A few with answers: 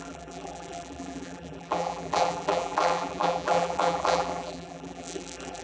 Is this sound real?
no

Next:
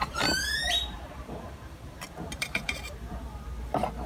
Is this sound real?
no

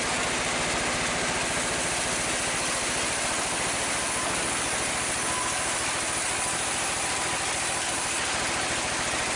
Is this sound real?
yes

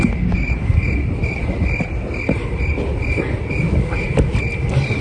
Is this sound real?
yes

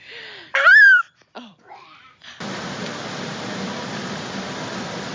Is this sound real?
no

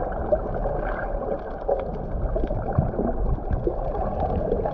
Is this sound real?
no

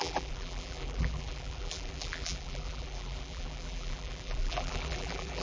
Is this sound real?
no